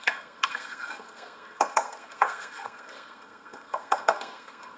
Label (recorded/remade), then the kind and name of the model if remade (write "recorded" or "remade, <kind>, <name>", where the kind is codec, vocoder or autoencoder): remade, codec, SNAC